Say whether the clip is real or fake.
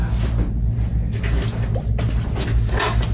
real